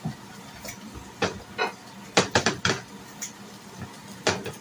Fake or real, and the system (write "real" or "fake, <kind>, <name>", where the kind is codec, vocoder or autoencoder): real